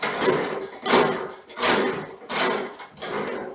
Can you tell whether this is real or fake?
real